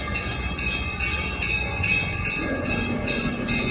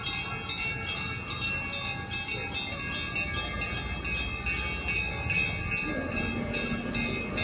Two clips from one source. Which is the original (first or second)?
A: second